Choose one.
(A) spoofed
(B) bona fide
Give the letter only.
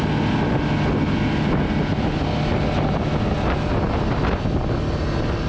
B